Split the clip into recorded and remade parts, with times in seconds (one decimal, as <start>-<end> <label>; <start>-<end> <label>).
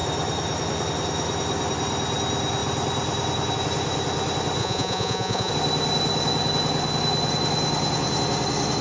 0.0-4.6 recorded; 4.6-5.5 remade; 5.5-8.8 recorded